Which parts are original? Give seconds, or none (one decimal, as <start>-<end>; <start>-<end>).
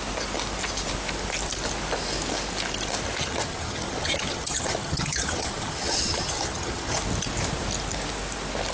0.0-3.2; 7.0-8.7